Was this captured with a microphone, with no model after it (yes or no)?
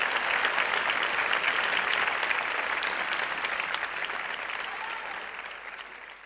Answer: yes